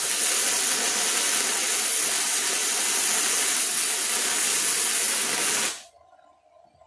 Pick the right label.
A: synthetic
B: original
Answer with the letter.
B